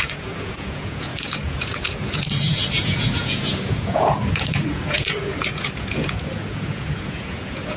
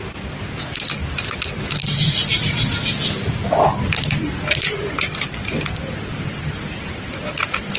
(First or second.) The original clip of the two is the second